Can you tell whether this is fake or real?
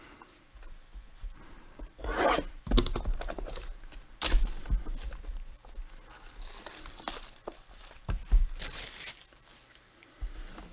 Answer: fake